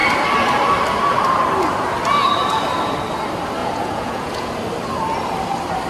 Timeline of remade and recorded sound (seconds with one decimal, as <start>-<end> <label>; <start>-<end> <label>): 0.0-3.6 recorded; 3.6-4.5 remade; 4.5-5.9 recorded